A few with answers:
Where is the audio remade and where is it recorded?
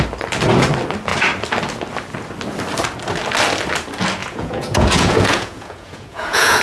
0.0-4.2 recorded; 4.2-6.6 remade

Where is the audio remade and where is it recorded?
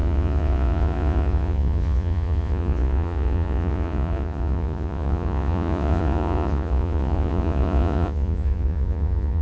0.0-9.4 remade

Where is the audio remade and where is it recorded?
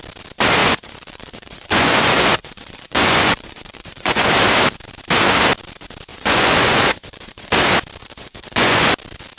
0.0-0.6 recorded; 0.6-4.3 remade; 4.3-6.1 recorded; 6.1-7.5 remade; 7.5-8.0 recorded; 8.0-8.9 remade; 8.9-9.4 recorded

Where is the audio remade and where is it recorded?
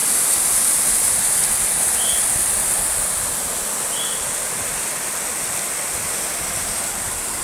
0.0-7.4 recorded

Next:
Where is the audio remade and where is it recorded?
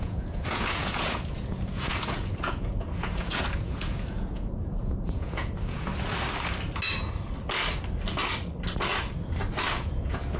0.0-5.9 remade; 5.9-9.7 recorded; 9.7-10.4 remade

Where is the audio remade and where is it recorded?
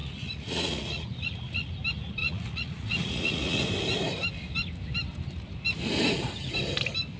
0.0-1.7 remade; 1.7-2.2 recorded; 2.2-3.6 remade; 3.6-7.2 recorded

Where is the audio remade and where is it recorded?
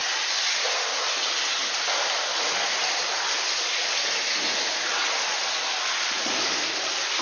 0.0-7.2 recorded